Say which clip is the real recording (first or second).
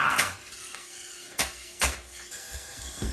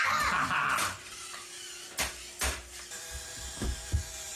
second